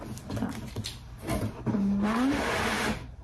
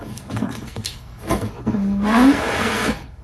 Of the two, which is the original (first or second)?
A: first